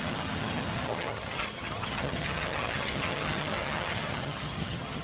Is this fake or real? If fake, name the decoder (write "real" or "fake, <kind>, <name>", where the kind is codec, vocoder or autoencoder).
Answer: fake, vocoder, HiFi-GAN